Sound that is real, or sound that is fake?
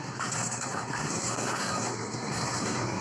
fake